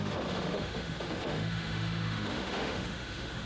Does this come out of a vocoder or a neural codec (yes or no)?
yes